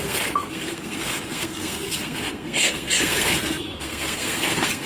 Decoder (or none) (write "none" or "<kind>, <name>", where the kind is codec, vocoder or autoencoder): codec, SNAC